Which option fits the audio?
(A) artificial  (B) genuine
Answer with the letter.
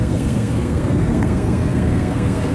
A